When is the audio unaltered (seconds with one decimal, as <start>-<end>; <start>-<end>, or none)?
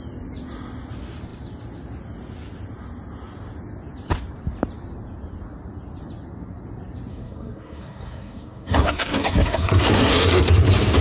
0.0-7.1; 10.4-11.0